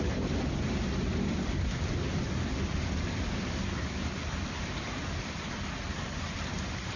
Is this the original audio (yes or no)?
no